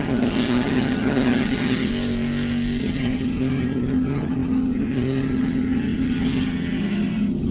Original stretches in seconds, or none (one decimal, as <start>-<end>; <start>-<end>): 1.9-2.8